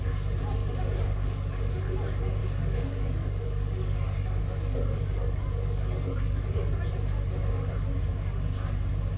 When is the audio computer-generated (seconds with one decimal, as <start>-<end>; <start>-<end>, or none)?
0.6-1.7; 2.4-6.8